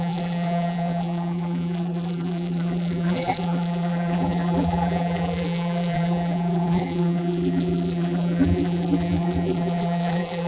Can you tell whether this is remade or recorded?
remade